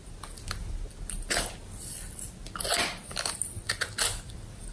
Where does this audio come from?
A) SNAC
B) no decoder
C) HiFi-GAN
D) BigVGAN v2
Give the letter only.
B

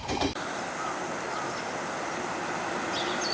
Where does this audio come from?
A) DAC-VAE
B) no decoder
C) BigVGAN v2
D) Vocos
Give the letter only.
B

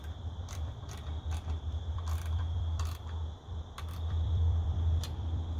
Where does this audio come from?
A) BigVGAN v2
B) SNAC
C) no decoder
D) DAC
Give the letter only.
A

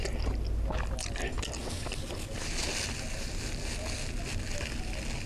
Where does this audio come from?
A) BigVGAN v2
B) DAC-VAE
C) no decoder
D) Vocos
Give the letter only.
C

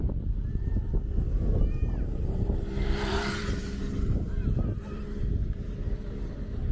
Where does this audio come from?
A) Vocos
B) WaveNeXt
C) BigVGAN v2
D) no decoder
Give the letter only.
C